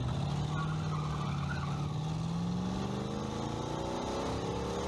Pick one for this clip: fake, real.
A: real